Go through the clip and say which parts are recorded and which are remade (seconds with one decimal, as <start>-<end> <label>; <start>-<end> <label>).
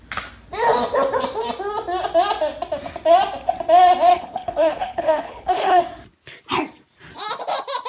0.0-4.1 recorded; 4.1-5.8 remade; 5.8-7.9 recorded